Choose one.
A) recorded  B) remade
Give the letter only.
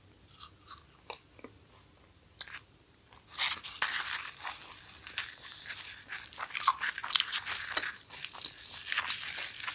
A